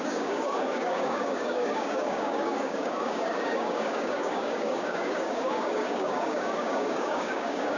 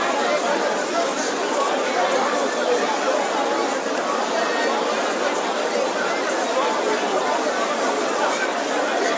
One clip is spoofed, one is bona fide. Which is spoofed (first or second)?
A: first